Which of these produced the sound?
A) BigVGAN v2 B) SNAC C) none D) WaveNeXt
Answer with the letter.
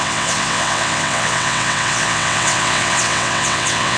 D